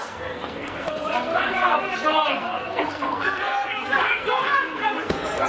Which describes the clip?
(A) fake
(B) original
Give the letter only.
A